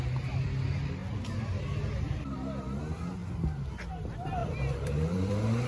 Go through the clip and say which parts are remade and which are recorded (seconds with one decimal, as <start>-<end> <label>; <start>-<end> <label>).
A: 0.0-3.2 recorded; 3.2-3.8 remade; 3.8-4.4 recorded; 4.4-5.3 remade; 5.3-5.7 recorded